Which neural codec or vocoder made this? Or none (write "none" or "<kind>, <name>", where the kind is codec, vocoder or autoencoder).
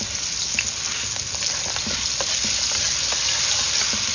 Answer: none